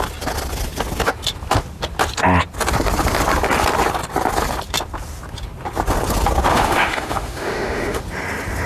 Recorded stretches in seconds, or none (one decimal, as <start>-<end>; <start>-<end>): 0.0-6.5; 8.0-8.7